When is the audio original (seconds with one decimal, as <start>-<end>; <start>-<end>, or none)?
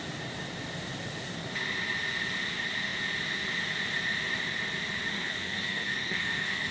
0.0-5.1